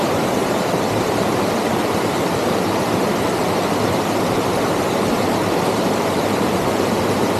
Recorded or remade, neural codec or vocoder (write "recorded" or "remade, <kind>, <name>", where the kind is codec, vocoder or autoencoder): remade, vocoder, BigVGAN v2